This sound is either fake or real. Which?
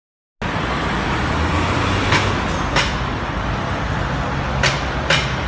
real